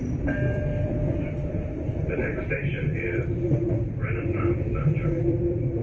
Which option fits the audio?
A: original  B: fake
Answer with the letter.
B